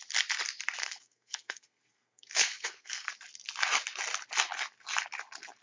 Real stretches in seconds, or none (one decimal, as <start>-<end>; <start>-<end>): 0.0-0.8; 3.1-5.6